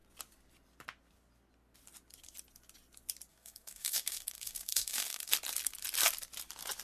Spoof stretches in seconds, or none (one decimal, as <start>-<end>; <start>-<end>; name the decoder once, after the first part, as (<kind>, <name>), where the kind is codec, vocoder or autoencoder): 3.3-5.3 (codec, DAC)

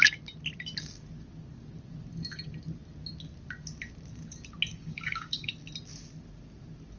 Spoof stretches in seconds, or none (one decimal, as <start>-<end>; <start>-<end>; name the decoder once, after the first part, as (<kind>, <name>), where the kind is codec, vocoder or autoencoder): 4.7-5.5 (codec, DAC)

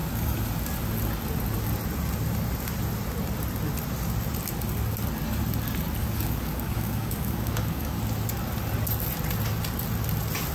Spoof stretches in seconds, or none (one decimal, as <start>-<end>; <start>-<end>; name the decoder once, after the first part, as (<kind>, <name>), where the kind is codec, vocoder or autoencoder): 6.0-8.0 (codec, DAC)

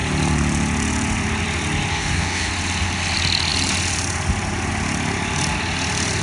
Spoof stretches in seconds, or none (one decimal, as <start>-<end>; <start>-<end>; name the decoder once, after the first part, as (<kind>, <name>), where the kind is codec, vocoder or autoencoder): 1.9-2.5 (codec, DAC)

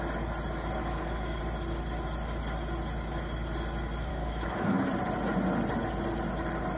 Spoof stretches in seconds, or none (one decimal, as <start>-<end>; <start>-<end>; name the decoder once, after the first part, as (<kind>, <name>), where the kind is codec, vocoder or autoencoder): 0.8-1.4 (codec, DAC); 4.1-4.9

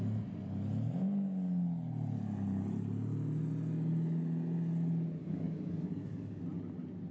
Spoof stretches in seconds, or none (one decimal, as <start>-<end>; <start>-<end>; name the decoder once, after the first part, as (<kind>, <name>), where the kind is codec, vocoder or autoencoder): 5.2-6.4 (codec, DAC)